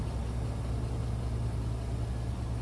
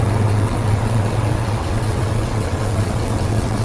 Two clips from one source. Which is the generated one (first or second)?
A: second